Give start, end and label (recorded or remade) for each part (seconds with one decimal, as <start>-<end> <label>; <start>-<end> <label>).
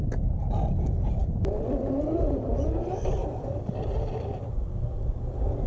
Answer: 0.0-1.2 recorded; 1.2-1.9 remade; 1.9-3.2 recorded; 3.2-3.9 remade; 3.9-5.7 recorded